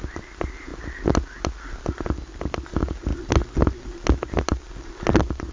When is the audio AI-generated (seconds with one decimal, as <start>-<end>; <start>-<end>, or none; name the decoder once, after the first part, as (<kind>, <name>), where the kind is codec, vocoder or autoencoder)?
none